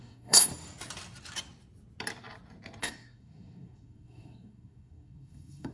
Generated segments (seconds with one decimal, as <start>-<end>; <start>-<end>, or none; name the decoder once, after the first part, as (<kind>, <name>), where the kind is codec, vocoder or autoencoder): 0.0-0.5 (codec, SNAC); 2.8-5.7